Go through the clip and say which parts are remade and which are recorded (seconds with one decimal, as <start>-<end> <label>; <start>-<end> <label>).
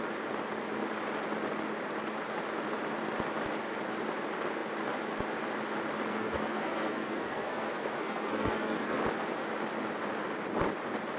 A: 0.0-6.1 recorded; 6.1-9.0 remade; 9.0-11.2 recorded